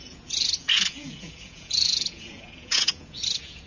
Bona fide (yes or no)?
no